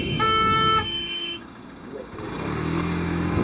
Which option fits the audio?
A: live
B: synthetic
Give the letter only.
B